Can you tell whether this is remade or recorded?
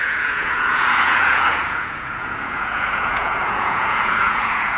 remade